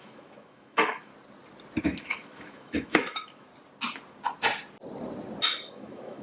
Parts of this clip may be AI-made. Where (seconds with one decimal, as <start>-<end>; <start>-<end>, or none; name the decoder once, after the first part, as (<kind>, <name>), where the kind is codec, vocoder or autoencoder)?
0.0-1.1 (autoencoder, DAC-VAE); 1.8-3.5; 5.7-6.2